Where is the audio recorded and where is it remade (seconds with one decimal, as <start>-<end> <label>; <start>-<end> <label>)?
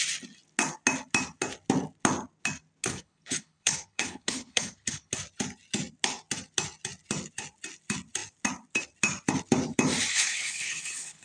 0.0-2.9 recorded; 2.9-5.1 remade; 5.1-10.1 recorded; 10.1-11.2 remade